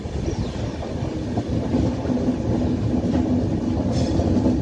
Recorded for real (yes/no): yes